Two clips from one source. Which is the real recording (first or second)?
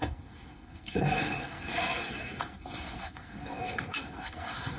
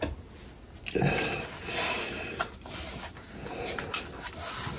second